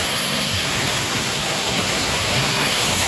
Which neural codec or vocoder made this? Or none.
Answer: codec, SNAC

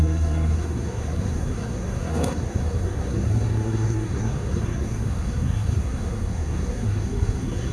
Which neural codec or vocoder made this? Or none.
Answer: codec, SNAC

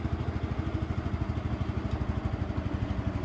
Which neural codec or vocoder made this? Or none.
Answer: none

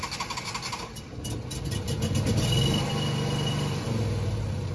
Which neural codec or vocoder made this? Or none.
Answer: none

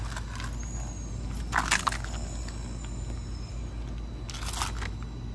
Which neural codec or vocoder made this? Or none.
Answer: none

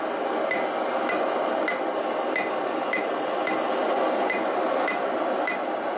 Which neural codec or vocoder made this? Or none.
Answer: none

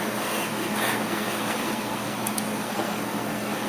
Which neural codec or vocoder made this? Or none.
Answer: codec, SNAC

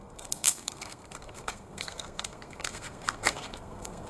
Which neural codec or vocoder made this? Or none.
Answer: codec, SNAC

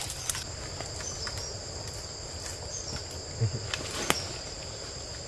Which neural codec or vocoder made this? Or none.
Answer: none